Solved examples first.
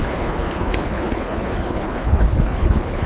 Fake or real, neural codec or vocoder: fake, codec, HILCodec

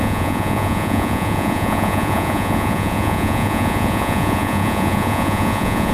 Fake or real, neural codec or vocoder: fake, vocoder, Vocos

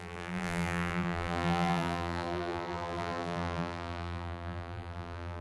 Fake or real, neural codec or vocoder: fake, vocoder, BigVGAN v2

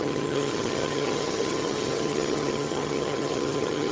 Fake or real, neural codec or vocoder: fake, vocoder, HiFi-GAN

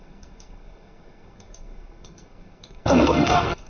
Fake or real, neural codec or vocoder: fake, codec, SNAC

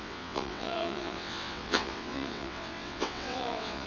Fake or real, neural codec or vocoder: fake, vocoder, WaveNeXt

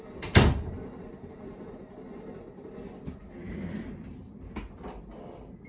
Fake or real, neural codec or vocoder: real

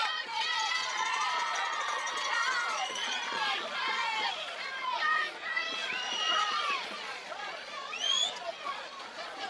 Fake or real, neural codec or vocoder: fake, vocoder, Vocos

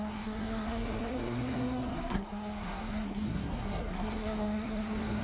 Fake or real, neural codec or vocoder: fake, codec, SNAC